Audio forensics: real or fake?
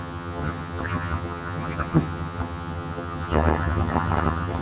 fake